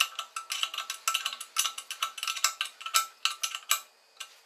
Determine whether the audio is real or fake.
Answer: real